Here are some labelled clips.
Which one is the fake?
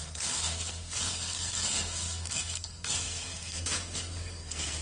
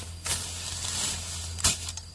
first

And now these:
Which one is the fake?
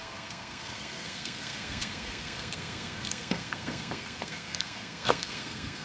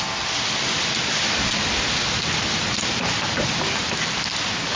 first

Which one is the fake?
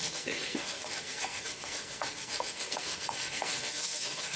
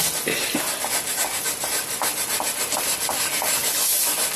first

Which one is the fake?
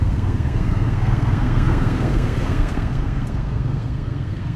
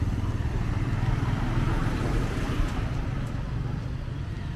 first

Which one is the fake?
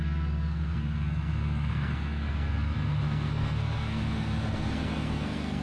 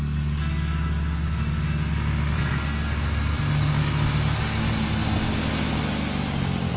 first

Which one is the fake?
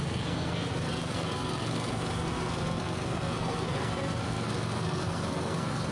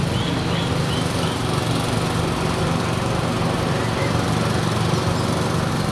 first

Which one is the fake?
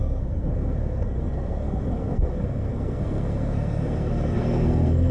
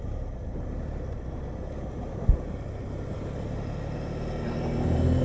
first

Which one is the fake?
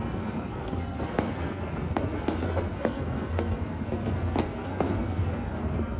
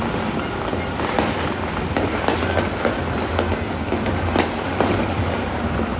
first